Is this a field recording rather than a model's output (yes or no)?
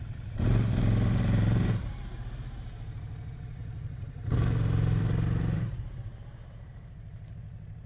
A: no